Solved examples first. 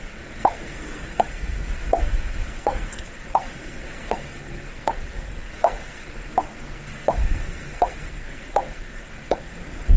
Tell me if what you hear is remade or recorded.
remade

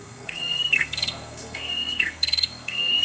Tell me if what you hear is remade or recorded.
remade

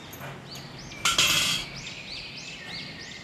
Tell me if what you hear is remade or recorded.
recorded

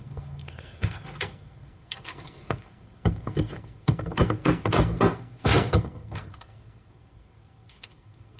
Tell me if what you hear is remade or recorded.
remade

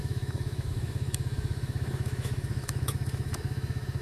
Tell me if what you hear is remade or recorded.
remade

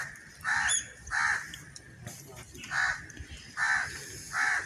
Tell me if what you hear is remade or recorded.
recorded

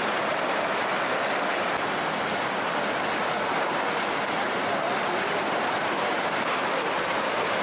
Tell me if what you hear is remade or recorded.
recorded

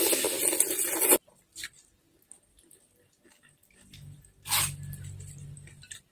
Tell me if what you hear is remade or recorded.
recorded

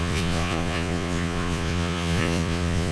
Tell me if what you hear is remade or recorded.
remade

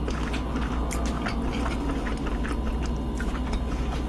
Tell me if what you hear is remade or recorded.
recorded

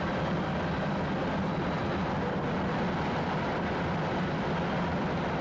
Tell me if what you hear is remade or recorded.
recorded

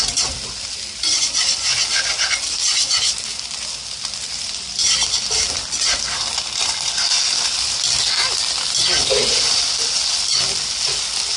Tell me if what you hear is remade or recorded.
recorded